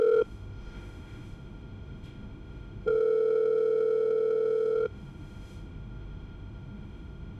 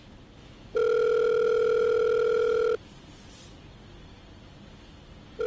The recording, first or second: second